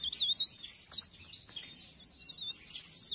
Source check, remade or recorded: recorded